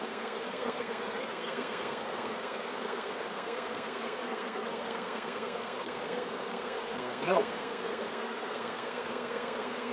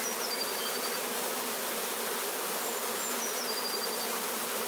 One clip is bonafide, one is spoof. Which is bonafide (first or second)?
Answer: second